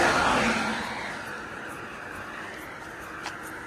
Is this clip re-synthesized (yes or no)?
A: no